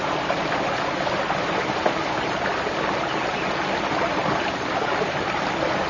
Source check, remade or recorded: recorded